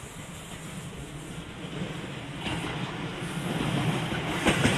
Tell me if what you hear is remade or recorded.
recorded